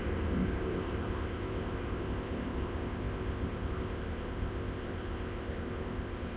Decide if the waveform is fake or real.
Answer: fake